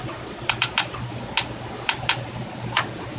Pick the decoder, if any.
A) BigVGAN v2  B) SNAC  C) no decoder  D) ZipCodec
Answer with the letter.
C